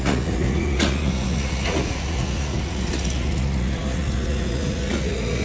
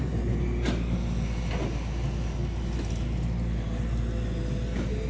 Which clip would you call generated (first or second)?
first